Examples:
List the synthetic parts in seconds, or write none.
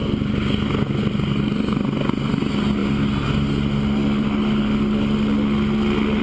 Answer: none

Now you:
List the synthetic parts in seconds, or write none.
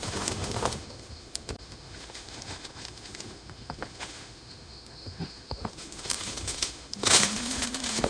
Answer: 0.0-8.1 (autoencoder, DAC-VAE)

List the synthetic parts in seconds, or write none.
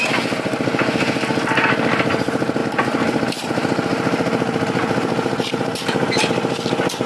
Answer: none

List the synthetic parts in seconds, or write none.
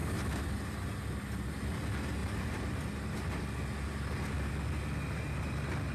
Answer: 0.0-0.9 (vocoder, BigVGAN v2); 2.2-2.9